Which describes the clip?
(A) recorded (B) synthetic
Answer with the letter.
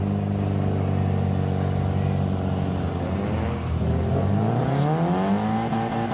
A